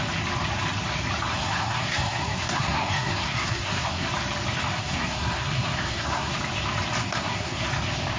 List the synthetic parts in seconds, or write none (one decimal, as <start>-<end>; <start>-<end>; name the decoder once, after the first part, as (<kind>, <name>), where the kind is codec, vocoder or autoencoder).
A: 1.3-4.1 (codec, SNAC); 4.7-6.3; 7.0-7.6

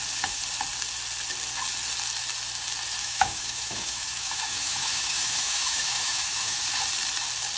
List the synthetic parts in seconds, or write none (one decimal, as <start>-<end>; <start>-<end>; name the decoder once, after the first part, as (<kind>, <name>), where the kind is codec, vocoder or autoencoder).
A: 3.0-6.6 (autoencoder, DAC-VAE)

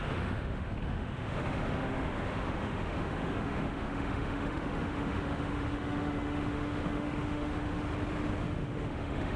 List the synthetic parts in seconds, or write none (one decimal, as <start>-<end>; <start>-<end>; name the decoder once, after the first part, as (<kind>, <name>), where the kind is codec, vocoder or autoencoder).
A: 0.0-7.9 (autoencoder, DAC-VAE); 8.4-9.4

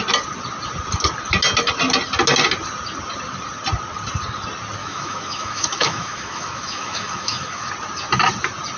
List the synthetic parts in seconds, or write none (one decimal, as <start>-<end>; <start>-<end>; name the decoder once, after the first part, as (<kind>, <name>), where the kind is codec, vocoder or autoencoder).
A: 4.8-7.7 (autoencoder, DAC-VAE)

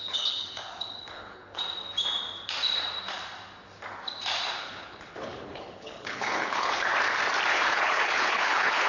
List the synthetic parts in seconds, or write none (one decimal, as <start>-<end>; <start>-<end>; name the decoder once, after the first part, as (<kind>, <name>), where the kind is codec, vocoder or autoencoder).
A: 0.0-1.6 (codec, HILCodec); 4.6-6.9; 7.5-8.9